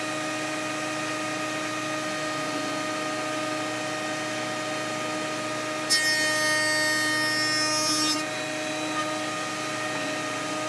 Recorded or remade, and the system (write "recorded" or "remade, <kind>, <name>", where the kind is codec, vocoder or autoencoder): recorded